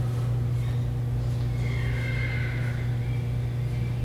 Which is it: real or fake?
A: real